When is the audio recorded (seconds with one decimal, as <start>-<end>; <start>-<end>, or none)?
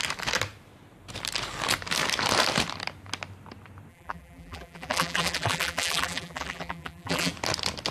0.0-3.9; 7.3-7.9